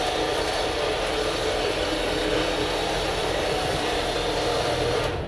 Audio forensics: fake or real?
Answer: fake